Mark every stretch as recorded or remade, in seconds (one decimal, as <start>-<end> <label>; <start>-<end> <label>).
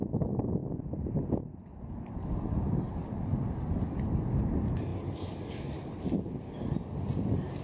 0.0-7.6 recorded